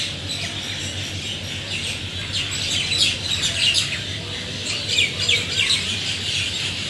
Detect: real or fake real